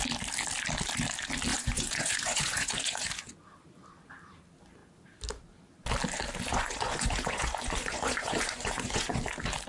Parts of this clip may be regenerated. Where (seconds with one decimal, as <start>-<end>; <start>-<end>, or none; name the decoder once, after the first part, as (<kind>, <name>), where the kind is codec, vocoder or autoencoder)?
1.5-3.2 (vocoder, Vocos); 6.5-9.2